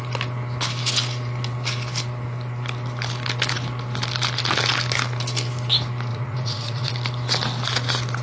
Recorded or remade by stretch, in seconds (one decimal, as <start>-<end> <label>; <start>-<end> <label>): 0.0-6.1 recorded; 6.1-6.9 remade; 6.9-8.2 recorded